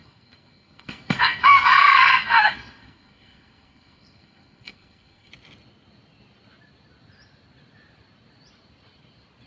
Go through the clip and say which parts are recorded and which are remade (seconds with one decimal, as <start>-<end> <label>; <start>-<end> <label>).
0.0-5.3 remade; 5.3-9.5 recorded